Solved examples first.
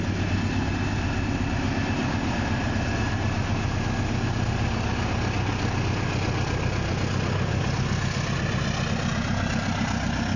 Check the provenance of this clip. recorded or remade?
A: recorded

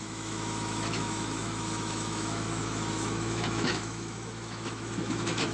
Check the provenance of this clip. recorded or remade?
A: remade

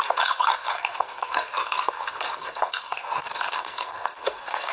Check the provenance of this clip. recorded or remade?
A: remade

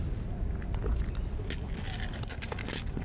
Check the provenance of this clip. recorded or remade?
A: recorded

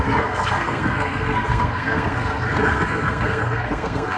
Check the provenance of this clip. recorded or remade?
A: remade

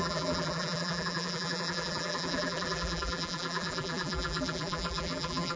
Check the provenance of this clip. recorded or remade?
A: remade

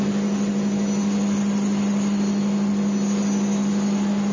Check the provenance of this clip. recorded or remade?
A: recorded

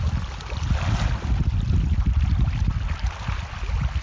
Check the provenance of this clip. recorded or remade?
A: recorded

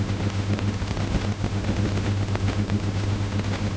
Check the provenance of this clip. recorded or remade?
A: remade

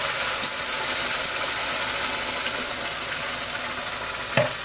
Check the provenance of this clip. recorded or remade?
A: recorded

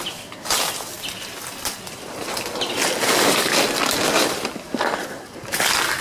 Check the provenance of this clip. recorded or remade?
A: recorded